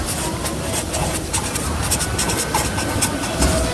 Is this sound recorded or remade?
recorded